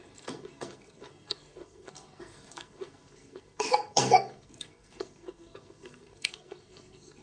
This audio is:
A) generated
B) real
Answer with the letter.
A